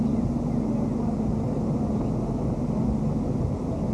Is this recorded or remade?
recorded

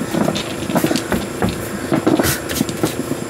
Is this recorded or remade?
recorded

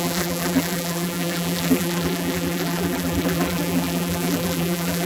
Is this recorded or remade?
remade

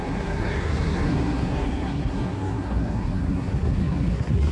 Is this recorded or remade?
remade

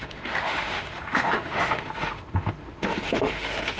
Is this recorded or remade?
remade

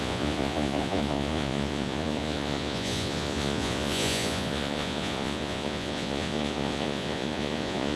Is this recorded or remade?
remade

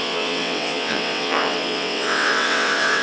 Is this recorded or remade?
remade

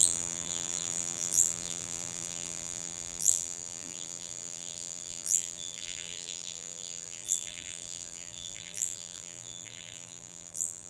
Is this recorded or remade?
remade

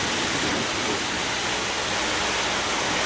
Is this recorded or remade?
recorded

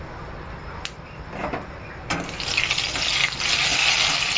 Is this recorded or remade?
recorded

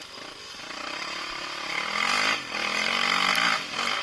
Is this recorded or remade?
recorded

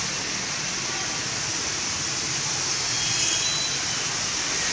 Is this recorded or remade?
recorded